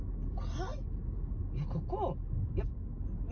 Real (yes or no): yes